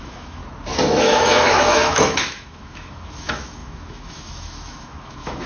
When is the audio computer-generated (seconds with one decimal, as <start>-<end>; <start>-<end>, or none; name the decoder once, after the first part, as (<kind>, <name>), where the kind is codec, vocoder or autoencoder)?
0.0-0.4 (autoencoder, DAC-VAE); 1.0-5.5